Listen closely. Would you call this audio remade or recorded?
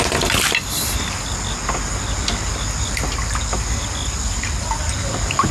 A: recorded